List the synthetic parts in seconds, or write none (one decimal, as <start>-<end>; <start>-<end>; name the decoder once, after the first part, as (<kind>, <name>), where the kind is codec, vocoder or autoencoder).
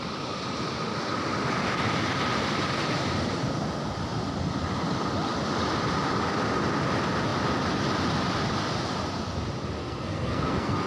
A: 9.8-10.9 (codec, SNAC)